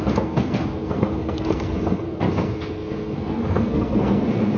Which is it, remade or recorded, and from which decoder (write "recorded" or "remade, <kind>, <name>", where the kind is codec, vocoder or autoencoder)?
remade, codec, SNAC